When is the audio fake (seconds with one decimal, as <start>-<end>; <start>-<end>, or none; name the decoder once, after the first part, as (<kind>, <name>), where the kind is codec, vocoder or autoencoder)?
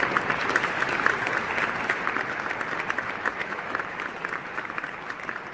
3.4-4.0 (autoencoder, DAC-VAE)